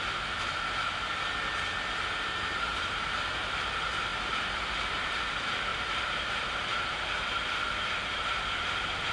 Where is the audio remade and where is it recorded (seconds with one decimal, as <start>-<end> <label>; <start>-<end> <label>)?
0.0-2.7 recorded; 2.7-3.6 remade; 3.6-4.1 recorded; 4.1-5.2 remade; 5.2-5.7 recorded; 5.7-9.1 remade